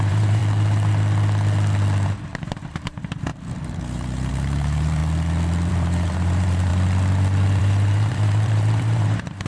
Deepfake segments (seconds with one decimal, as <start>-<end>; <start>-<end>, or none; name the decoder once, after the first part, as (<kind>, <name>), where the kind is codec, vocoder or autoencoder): 0.0-0.4 (vocoder, BigVGAN v2); 2.2-5.0; 5.7-6.7; 7.6-9.5